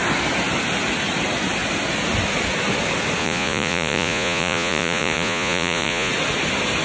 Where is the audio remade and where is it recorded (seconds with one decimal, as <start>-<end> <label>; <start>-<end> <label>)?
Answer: 0.0-3.2 recorded; 3.2-6.1 remade; 6.1-6.8 recorded